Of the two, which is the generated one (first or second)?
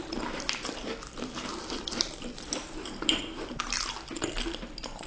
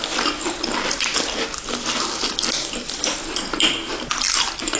first